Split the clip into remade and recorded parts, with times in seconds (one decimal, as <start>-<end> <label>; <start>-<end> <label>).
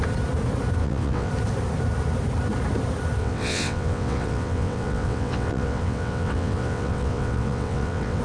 0.0-0.8 recorded; 0.8-1.3 remade; 1.3-3.2 recorded; 3.2-8.2 remade